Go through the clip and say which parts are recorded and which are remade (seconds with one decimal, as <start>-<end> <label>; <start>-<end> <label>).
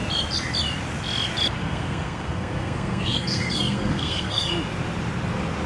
0.0-1.6 recorded; 1.6-4.5 remade; 4.5-5.7 recorded